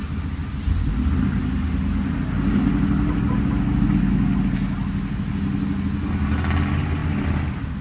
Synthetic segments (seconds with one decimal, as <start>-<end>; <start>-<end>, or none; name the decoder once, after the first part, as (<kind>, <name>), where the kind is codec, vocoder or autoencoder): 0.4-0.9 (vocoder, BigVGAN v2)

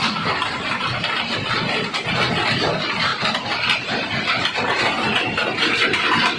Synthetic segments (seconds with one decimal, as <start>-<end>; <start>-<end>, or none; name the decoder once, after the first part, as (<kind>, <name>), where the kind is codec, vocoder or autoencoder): none

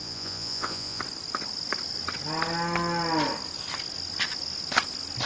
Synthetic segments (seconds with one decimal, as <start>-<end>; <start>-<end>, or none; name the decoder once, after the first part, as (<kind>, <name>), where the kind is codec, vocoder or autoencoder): 0.0-1.0 (vocoder, Vocos)

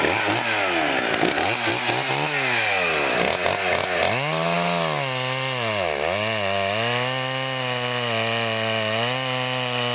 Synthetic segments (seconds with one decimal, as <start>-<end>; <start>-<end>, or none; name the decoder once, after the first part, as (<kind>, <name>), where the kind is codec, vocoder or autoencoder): none

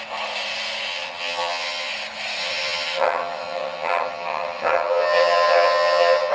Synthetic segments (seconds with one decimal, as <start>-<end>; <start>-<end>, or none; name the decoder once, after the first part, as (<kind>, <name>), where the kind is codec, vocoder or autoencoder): 0.9-1.9 (vocoder, HiFi-GAN); 2.4-6.3